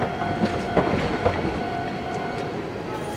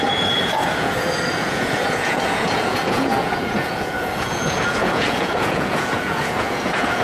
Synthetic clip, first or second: second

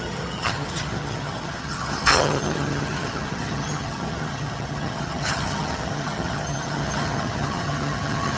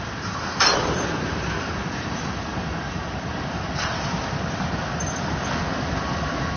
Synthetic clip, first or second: first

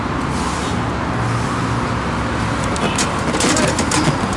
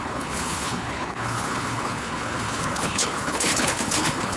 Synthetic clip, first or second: second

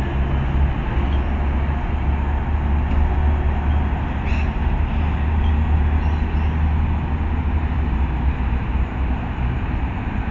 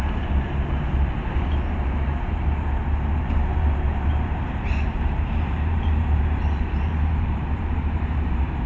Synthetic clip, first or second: second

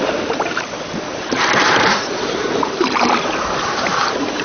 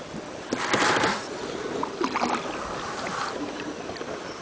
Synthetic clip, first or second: first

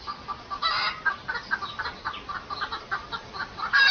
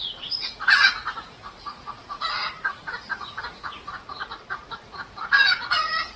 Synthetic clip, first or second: second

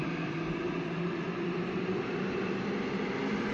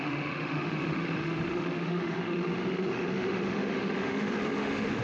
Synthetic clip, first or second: second